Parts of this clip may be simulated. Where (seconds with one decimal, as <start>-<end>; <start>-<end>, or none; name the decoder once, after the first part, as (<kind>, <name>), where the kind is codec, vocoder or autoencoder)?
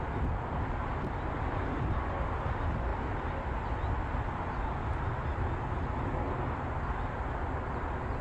none